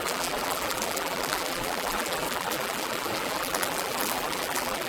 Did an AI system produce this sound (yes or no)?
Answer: yes